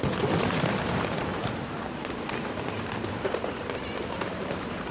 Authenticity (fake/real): fake